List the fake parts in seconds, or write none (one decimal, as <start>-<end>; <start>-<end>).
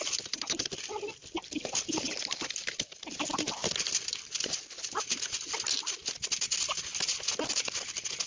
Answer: none